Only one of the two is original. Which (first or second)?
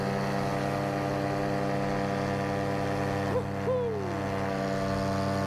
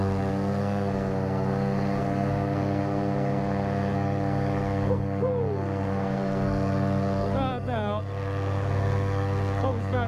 first